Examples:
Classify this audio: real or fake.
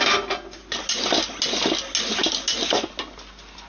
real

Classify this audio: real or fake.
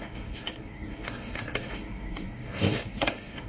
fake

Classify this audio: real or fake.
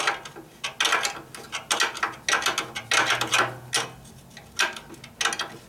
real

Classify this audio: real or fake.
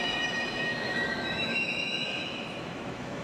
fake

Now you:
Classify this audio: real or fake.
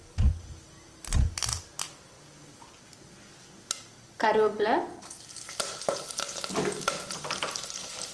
real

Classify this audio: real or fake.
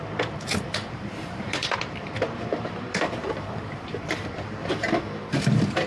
fake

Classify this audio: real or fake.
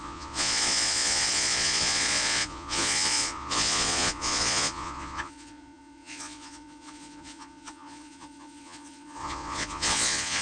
fake